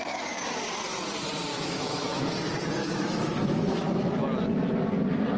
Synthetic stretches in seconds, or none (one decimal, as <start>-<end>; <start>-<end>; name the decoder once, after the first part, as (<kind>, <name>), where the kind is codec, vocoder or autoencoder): 1.5-2.2 (autoencoder, DAC-VAE); 2.8-4.2